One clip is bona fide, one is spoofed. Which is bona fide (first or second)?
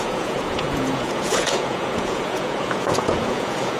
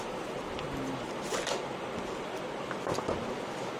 second